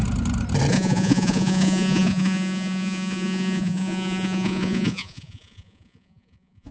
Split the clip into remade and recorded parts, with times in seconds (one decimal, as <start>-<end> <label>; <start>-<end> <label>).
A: 0.0-0.7 recorded; 0.7-6.7 remade